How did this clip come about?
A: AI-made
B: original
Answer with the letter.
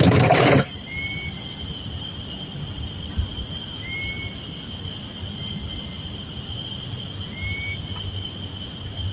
B